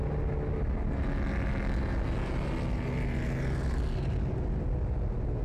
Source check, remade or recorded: recorded